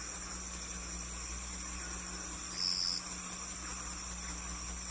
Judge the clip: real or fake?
real